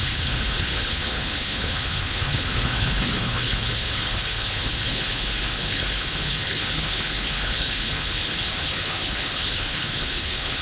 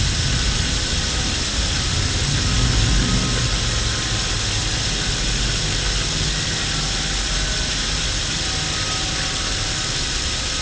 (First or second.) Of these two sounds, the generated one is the first